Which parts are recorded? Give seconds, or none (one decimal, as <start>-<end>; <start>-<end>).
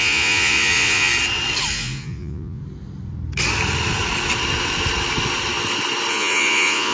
1.1-1.7; 2.6-6.1